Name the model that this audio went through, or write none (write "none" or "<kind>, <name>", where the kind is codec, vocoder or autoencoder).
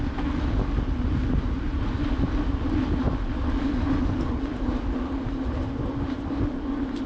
none